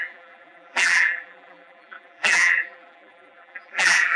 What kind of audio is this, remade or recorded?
remade